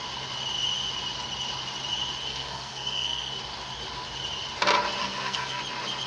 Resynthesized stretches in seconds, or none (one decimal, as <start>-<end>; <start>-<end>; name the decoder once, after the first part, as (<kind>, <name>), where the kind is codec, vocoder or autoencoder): 2.3-3.3 (codec, SNAC); 5.0-5.6